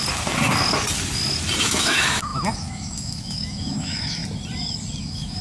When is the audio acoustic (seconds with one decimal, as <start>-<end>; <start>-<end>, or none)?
0.0-1.6; 4.2-5.0